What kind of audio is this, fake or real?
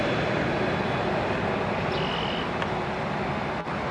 real